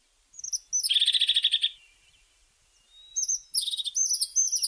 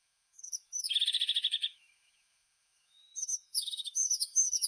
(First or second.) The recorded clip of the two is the first